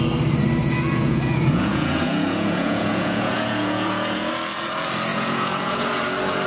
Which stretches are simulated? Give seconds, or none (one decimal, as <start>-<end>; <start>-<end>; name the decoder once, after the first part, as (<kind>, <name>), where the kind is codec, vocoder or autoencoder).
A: 0.6-4.3 (vocoder, Vocos); 5.1-6.0